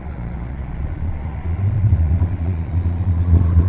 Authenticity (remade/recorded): remade